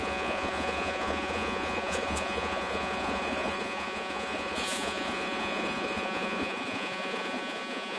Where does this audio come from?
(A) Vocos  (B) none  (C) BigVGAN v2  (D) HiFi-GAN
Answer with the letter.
A